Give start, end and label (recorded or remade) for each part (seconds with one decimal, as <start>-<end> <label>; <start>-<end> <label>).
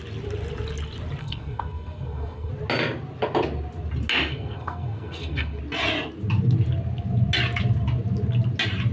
0.0-1.2 recorded; 1.2-2.5 remade; 2.5-4.3 recorded; 4.3-5.6 remade; 5.6-8.9 recorded